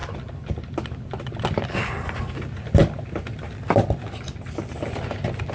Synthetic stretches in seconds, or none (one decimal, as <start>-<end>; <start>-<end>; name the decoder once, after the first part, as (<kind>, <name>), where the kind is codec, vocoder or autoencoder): 0.0-1.2 (vocoder, BigVGAN v2); 2.8-4.7